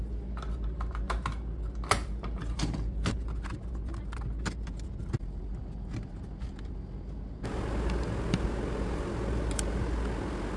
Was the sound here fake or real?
real